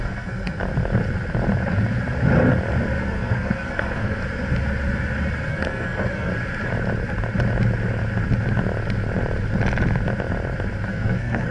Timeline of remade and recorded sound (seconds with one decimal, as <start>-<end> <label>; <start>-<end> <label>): 0.0-0.6 remade; 0.6-3.0 recorded; 3.0-4.2 remade; 4.2-5.5 recorded; 5.5-6.3 remade; 6.3-10.9 recorded; 10.9-11.5 remade